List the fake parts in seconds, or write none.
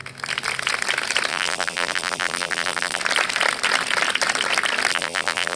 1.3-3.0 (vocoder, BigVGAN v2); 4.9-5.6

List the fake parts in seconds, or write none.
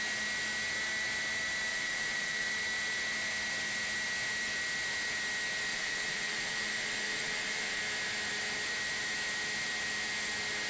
1.7-2.5 (vocoder, Vocos); 5.7-7.8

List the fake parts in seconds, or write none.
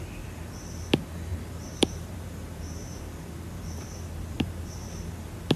1.3-4.7 (vocoder, BigVGAN v2)